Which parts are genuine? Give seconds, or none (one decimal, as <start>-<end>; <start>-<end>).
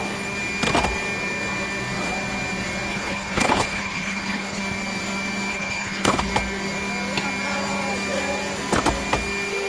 0.0-2.9; 4.6-5.5; 6.3-9.7